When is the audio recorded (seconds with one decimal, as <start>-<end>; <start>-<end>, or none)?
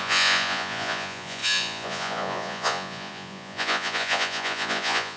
none